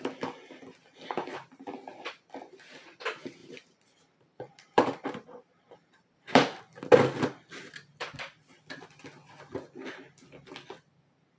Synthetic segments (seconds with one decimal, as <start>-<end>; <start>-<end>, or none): 3.4-6.6